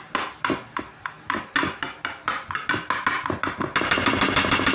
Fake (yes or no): no